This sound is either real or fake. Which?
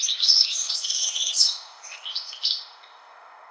fake